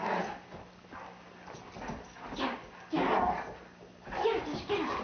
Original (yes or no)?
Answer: yes